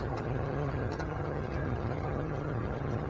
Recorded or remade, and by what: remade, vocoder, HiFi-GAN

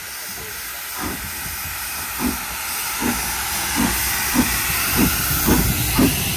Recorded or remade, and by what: recorded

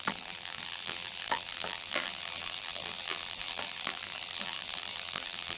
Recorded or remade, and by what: remade, vocoder, BigVGAN v2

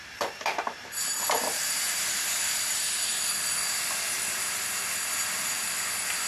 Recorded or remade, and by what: remade, vocoder, BigVGAN v2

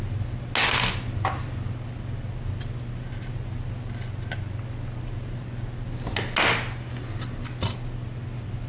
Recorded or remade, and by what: recorded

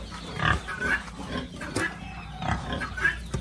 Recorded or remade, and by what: recorded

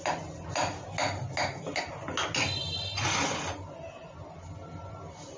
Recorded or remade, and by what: recorded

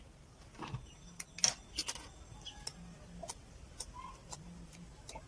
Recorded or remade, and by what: recorded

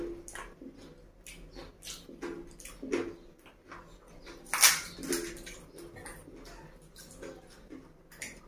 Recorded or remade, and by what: recorded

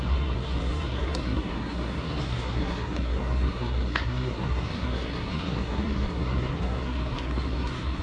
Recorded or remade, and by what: remade, codec, SNAC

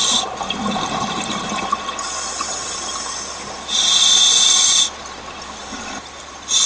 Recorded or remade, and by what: recorded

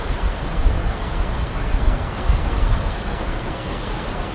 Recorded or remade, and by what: remade, codec, SNAC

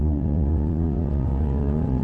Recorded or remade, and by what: remade, vocoder, WaveNeXt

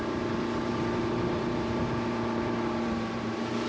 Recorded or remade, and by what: remade, vocoder, BigVGAN v2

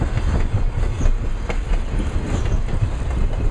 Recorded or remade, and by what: recorded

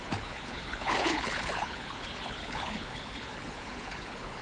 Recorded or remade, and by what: remade, codec, HILCodec